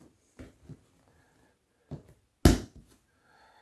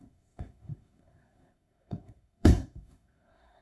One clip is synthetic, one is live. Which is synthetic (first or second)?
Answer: second